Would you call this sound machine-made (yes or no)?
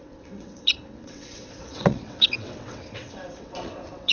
yes